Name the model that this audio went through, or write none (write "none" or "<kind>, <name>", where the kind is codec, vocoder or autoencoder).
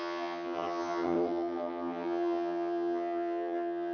vocoder, HiFi-GAN